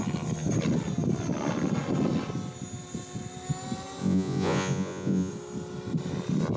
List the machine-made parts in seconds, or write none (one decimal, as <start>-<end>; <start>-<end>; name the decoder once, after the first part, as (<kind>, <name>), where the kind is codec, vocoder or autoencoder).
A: 4.0-5.3 (vocoder, Vocos)